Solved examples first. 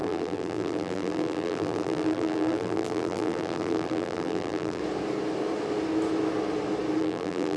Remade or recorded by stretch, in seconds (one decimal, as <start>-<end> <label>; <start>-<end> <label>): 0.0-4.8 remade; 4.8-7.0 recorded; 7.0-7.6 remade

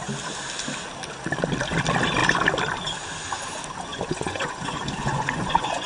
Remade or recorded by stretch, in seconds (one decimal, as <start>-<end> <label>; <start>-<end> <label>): 0.0-3.9 recorded; 3.9-5.9 remade

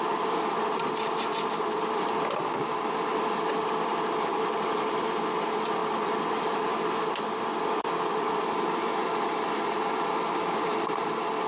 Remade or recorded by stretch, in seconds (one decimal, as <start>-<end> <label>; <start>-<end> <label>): 0.0-11.5 remade

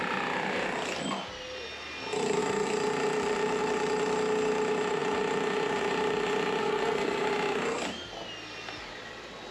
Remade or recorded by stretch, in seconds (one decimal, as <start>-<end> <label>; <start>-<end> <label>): 0.0-6.6 recorded; 6.6-7.3 remade; 7.3-9.5 recorded